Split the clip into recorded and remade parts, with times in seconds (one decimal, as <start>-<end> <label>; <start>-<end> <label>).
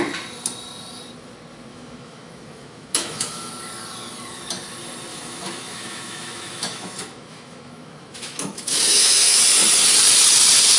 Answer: 0.0-1.7 recorded; 1.7-3.5 remade; 3.5-5.1 recorded; 5.1-9.4 remade; 9.4-10.8 recorded